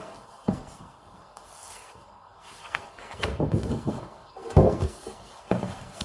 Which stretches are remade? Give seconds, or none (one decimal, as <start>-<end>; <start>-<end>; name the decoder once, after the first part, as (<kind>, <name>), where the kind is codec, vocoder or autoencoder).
0.0-6.0 (codec, SNAC)